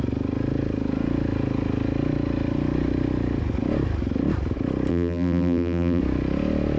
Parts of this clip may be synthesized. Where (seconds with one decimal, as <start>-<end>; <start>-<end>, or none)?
4.9-6.0